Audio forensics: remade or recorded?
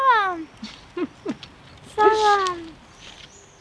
recorded